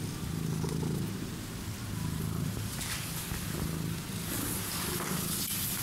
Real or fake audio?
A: real